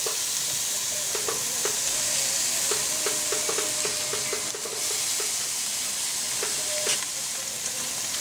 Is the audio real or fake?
real